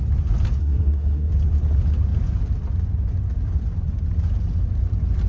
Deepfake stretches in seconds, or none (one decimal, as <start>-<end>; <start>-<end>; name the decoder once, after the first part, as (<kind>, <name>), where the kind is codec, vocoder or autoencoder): 0.6-1.3 (codec, SNAC)